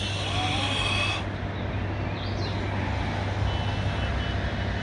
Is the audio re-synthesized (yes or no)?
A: no